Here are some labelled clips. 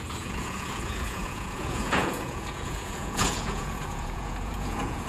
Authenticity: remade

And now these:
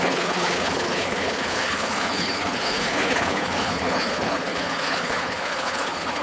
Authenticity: remade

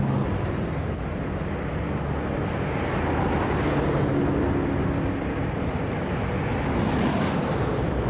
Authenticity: recorded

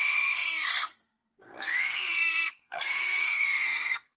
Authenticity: remade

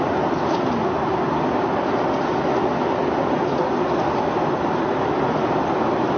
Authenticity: recorded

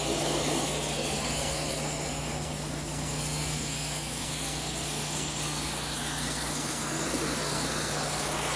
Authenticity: remade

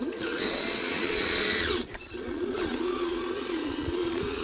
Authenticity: remade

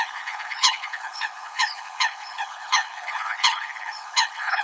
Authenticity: remade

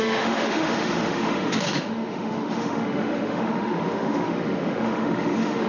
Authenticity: remade